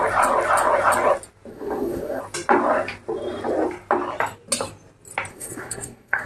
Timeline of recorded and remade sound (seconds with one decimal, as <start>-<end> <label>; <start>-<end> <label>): 0.0-1.5 recorded; 1.5-2.2 remade; 2.2-5.3 recorded; 5.3-6.3 remade